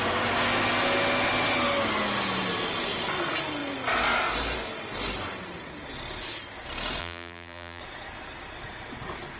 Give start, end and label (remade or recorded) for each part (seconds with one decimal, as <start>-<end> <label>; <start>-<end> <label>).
0.0-7.0 recorded; 7.0-7.8 remade; 7.8-9.4 recorded